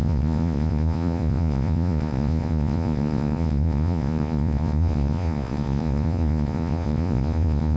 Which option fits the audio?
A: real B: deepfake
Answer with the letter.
B